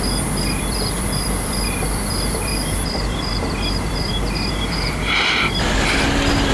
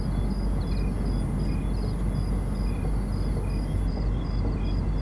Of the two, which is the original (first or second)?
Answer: second